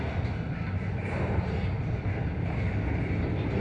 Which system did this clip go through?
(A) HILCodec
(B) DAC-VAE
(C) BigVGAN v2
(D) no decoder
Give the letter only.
D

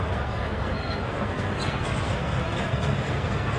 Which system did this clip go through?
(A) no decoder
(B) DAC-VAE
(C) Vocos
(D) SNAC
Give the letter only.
D